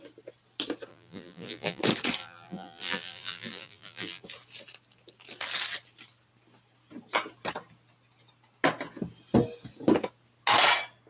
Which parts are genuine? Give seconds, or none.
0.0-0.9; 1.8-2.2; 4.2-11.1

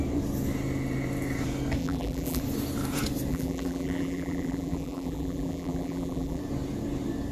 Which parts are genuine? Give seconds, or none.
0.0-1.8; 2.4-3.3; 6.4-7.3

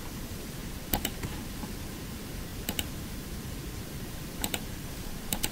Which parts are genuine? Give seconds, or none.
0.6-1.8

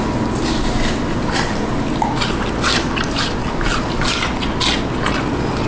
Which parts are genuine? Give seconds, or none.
0.0-5.7